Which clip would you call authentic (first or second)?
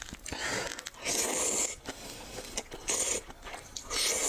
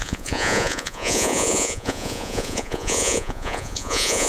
first